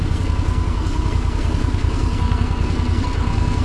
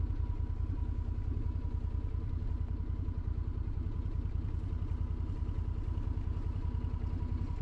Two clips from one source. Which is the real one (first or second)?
second